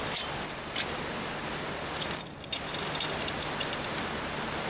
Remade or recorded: recorded